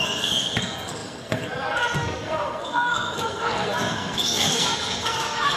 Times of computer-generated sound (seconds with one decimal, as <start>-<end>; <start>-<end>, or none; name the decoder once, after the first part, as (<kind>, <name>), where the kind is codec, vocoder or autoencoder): 0.0-5.6 (codec, SNAC)